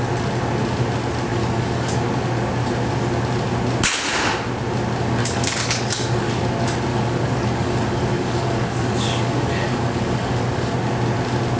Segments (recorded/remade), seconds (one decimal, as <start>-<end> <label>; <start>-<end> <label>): 0.0-1.3 recorded; 1.3-2.1 remade; 2.1-5.2 recorded; 5.2-6.3 remade; 6.3-6.9 recorded; 6.9-10.7 remade; 10.7-11.6 recorded